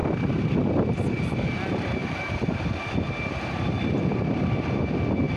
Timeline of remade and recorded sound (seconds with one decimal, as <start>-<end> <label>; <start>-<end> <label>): 0.0-5.4 recorded